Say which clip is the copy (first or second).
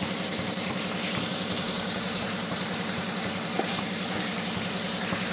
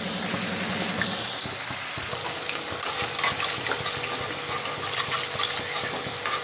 first